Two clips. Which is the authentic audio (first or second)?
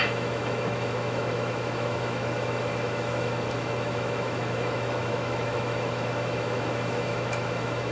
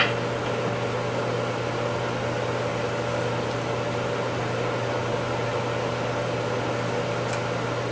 second